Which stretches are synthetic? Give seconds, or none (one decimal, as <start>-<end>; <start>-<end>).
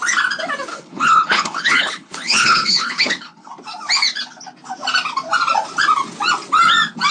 0.7-3.5